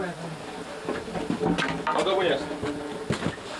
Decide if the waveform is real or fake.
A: real